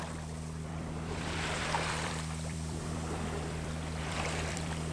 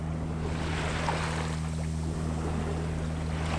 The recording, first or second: second